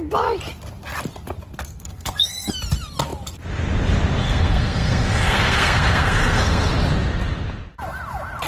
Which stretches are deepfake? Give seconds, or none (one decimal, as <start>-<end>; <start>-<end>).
1.7-2.5; 4.2-6.7